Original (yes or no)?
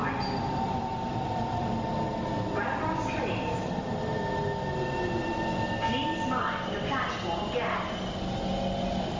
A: yes